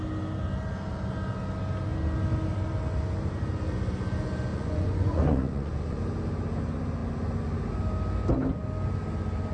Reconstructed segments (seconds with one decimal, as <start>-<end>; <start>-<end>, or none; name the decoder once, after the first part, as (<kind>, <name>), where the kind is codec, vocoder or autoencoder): 4.5-6.0 (vocoder, Vocos)